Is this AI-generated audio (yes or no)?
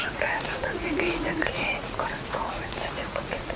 yes